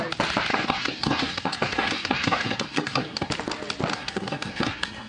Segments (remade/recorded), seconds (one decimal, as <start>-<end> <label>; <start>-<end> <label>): 0.0-0.5 recorded; 0.5-3.3 remade; 3.3-3.9 recorded; 3.9-5.1 remade